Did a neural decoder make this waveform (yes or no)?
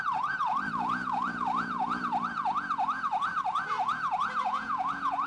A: yes